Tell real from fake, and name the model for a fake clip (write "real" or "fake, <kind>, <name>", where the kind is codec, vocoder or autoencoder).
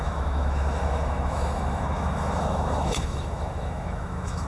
fake, autoencoder, DAC-VAE